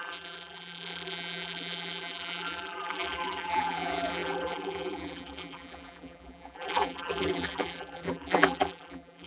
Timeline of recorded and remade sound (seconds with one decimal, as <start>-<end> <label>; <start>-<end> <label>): 0.0-9.3 remade